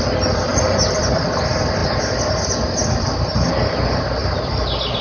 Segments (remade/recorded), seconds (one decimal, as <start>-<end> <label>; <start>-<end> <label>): 0.0-0.5 recorded; 0.5-1.4 remade; 1.4-4.2 recorded; 4.2-5.0 remade